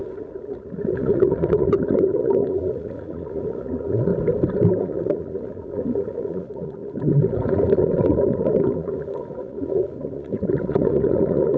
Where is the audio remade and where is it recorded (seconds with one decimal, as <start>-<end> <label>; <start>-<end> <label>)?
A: 0.0-4.1 remade; 4.1-4.8 recorded; 4.8-11.6 remade